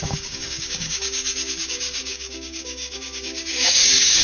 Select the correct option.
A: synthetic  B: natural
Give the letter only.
A